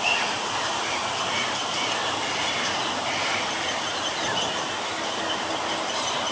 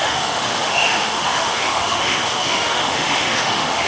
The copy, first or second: second